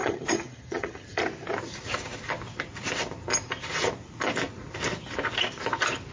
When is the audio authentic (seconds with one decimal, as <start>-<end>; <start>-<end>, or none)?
1.2-6.1